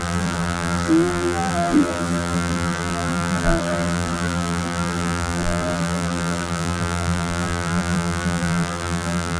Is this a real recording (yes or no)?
no